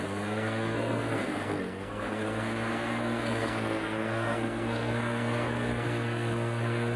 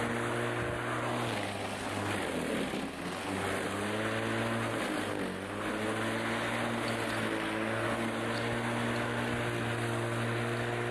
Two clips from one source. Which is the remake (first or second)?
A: first